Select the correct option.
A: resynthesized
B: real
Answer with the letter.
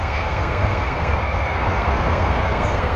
A